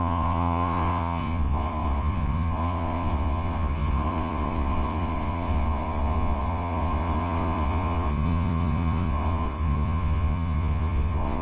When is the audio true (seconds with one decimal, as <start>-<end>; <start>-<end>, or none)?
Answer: none